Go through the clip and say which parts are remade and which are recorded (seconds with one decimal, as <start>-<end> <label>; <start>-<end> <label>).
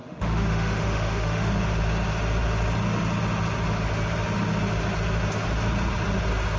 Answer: 0.0-1.5 remade; 1.5-6.6 recorded